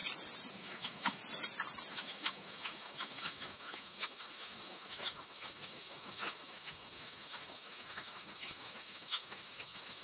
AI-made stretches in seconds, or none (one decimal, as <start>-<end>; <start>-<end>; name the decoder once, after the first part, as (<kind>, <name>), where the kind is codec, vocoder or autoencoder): 0.5-1.2 (autoencoder, DAC-VAE); 1.9-10.0